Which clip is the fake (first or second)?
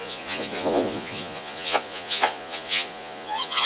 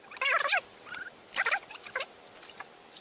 first